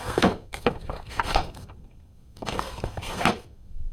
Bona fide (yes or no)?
no